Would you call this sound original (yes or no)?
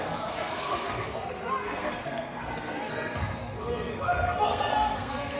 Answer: no